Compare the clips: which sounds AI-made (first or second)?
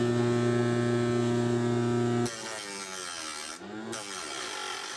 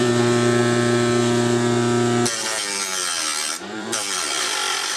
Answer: second